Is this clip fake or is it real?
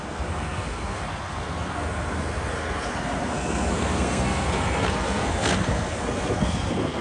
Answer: fake